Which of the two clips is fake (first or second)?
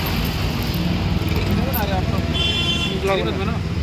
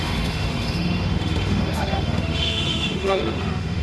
second